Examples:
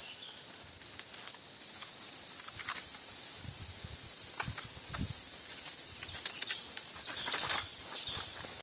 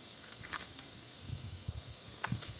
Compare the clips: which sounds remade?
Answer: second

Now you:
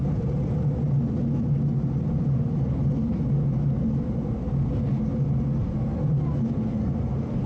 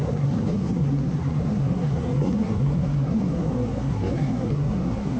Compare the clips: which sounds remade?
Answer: second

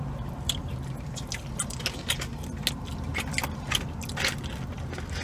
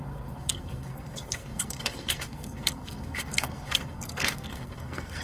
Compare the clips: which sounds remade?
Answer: second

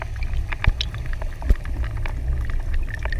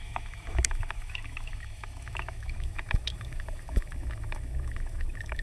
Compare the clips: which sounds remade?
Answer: second